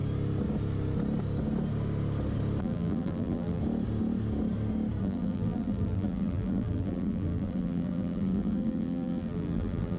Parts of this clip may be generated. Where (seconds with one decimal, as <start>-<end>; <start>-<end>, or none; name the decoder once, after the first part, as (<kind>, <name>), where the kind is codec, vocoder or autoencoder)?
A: 2.6-3.6 (vocoder, BigVGAN v2); 5.0-10.0